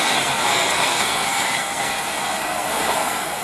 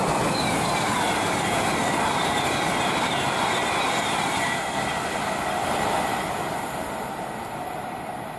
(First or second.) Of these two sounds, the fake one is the first